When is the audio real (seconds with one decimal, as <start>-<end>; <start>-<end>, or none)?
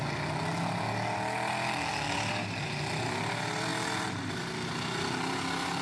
0.0-5.8